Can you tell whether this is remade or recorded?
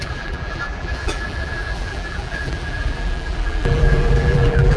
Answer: remade